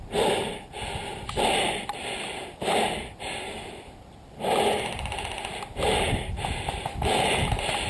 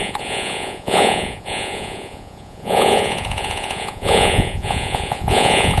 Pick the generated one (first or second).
second